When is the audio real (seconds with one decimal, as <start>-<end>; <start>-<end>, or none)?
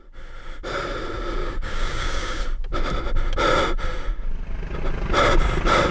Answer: 0.0-1.4; 2.4-5.9